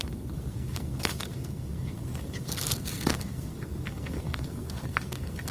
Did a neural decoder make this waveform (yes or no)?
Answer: yes